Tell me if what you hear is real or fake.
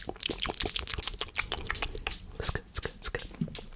real